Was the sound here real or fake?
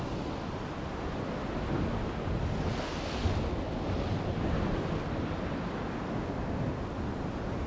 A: real